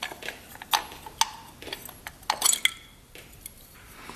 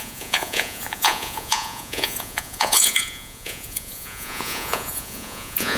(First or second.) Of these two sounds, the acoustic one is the first